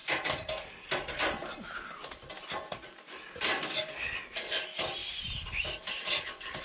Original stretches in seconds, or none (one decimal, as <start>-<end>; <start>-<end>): 0.7-5.0